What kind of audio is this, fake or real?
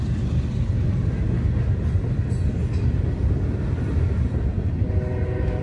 real